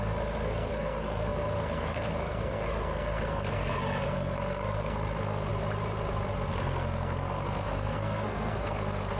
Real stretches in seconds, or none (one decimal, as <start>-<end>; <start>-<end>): 5.5-6.5